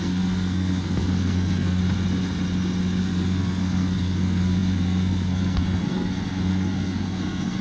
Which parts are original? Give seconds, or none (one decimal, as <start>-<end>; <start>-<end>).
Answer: 1.8-3.0